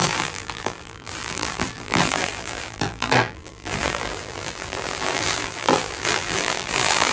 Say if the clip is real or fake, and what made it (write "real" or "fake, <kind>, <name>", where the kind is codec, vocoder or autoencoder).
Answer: fake, vocoder, BigVGAN v2